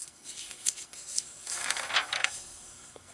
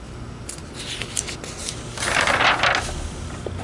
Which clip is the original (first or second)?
second